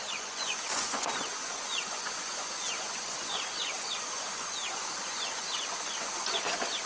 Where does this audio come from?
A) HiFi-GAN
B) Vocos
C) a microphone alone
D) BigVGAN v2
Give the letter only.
B